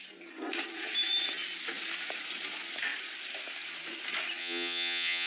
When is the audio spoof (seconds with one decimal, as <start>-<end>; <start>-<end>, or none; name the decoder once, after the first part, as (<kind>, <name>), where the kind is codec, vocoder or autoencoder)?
4.4-5.3 (vocoder, Vocos)